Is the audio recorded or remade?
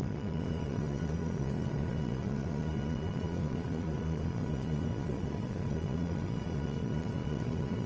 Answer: remade